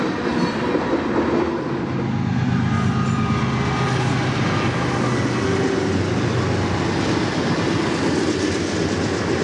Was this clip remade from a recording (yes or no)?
no